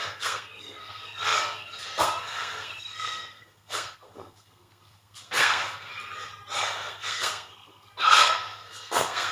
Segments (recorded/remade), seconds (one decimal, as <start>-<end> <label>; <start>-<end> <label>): 0.0-5.9 remade; 5.9-6.6 recorded; 6.6-9.3 remade